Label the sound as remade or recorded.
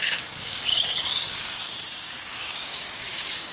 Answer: remade